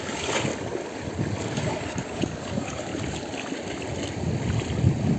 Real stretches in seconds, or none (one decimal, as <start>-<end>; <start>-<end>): 0.5-1.4; 2.9-5.2